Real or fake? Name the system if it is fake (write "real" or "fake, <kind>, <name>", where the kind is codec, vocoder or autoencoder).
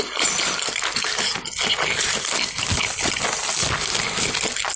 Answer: real